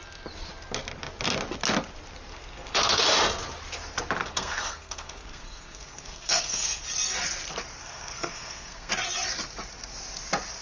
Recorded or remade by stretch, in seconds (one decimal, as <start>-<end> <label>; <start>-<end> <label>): 0.0-2.3 recorded; 2.3-3.0 remade; 3.0-4.2 recorded; 4.2-6.8 remade; 6.8-7.8 recorded; 7.8-8.9 remade; 8.9-10.6 recorded